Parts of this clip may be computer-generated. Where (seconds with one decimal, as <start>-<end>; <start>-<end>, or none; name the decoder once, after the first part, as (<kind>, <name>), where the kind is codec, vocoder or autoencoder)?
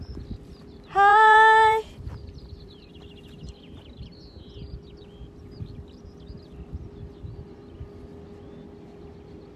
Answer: 1.1-2.9 (vocoder, BigVGAN v2)